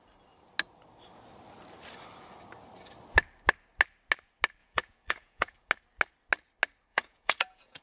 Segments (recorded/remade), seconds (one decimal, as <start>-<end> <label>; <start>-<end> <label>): 0.0-4.6 recorded; 4.6-5.7 remade; 5.7-6.9 recorded; 6.9-7.8 remade